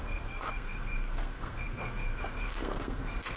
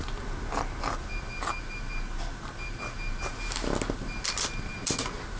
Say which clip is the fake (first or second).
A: first